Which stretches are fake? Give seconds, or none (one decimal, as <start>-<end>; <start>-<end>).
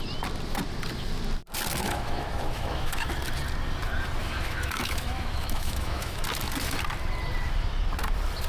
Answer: 1.8-3.1; 4.2-6.2